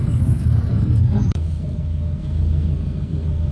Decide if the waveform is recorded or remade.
remade